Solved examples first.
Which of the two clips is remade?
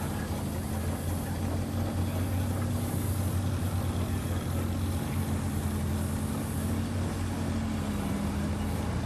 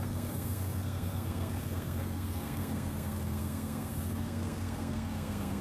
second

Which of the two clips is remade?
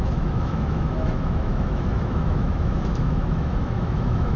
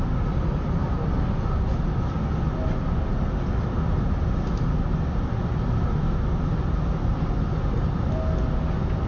first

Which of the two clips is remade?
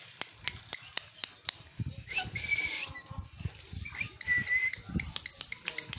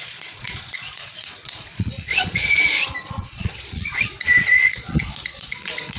second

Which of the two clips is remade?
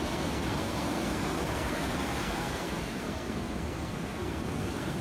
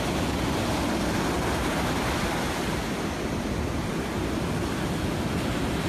first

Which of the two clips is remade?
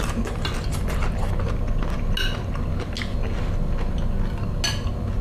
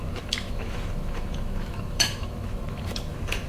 second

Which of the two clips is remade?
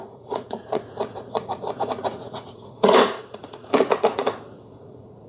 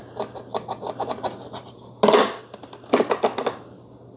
first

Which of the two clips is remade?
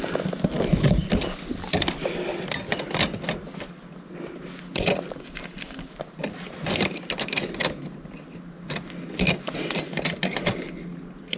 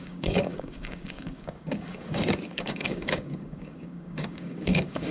second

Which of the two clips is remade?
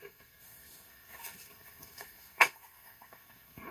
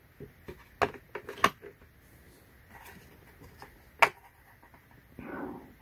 first